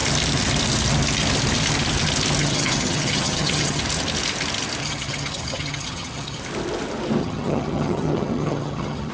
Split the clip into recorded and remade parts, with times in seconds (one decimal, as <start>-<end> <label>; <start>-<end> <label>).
0.0-2.4 recorded; 2.4-3.8 remade; 3.8-4.8 recorded; 4.8-6.4 remade; 6.4-7.2 recorded; 7.2-9.1 remade